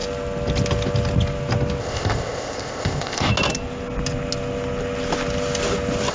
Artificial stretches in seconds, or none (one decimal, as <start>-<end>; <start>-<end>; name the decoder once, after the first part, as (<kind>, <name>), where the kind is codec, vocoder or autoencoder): 1.8-3.3 (codec, ZipCodec)